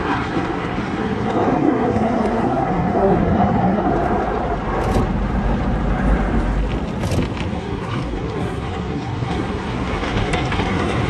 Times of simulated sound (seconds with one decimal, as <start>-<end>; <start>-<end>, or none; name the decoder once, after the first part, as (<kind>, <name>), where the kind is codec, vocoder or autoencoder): 0.0-3.9 (codec, SNAC); 7.5-11.1